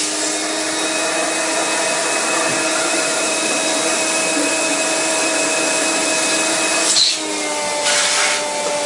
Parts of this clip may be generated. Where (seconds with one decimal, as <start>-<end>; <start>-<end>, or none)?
2.7-3.6